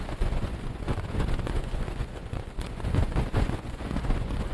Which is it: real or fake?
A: fake